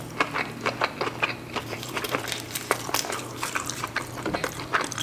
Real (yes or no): no